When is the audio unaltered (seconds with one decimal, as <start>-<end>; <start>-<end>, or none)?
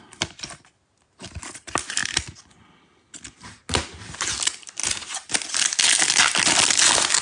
0.0-7.2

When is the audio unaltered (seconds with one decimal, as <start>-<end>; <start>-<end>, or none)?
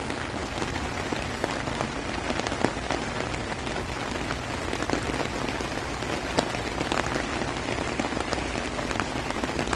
0.0-9.8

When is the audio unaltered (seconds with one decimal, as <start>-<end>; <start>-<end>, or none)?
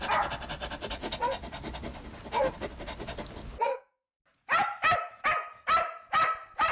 0.0-6.7